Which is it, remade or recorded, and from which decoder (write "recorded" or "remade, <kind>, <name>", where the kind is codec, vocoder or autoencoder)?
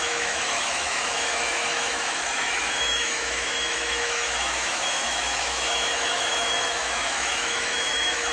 remade, autoencoder, DAC-VAE